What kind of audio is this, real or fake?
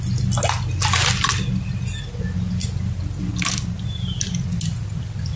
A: real